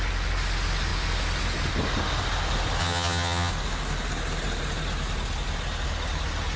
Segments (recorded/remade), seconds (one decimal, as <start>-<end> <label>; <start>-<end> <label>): 0.0-2.8 recorded; 2.8-3.5 remade; 3.5-6.6 recorded